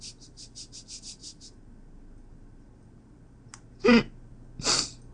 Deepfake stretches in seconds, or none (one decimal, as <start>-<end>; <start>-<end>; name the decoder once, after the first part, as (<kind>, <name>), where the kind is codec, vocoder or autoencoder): none